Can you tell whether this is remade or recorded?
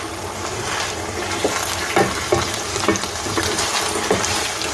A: recorded